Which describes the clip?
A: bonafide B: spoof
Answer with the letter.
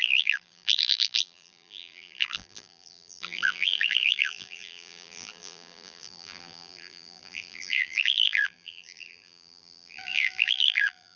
B